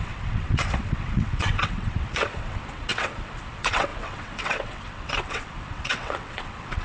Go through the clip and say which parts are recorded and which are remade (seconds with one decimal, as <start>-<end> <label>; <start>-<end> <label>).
0.0-6.8 remade